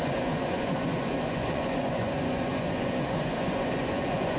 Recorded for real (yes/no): no